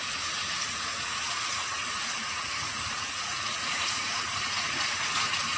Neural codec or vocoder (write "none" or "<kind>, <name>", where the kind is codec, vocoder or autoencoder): vocoder, Vocos